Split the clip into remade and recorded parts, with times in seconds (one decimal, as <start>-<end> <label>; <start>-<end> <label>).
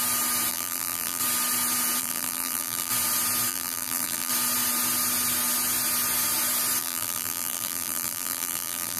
0.0-0.5 recorded; 0.5-1.2 remade; 1.2-2.0 recorded; 2.0-2.9 remade; 2.9-3.5 recorded; 3.5-4.3 remade; 4.3-6.8 recorded; 6.8-9.0 remade